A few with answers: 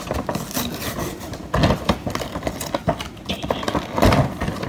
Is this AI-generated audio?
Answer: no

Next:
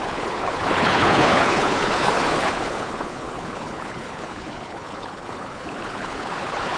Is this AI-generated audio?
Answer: yes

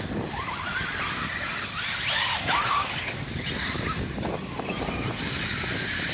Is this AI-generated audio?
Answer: no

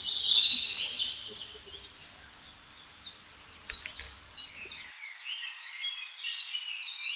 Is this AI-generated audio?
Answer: no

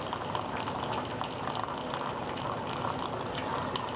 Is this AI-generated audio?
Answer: no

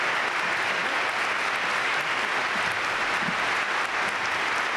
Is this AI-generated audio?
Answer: no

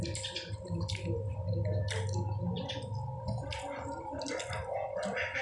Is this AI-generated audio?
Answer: no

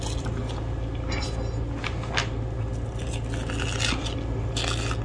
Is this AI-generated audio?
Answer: no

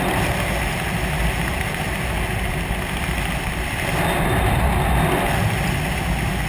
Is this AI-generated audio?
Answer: no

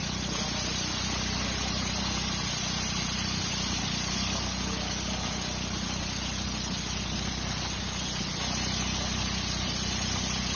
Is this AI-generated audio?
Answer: no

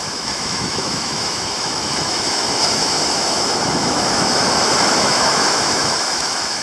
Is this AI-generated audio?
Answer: yes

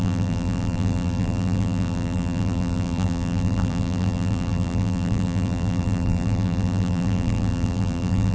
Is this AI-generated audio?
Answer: yes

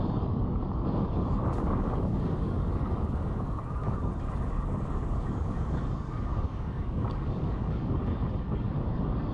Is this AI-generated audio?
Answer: yes